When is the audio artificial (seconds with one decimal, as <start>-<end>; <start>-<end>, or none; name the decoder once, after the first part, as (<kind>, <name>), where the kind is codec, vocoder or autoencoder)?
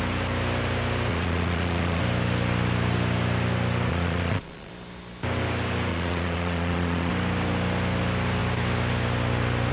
1.1-2.0 (vocoder, Vocos); 3.9-4.7; 5.9-7.1